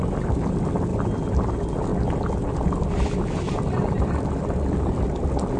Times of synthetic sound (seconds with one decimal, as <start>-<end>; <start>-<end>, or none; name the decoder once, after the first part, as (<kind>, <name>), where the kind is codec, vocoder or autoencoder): none